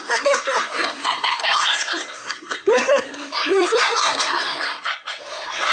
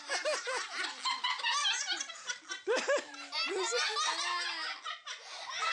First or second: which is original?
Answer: second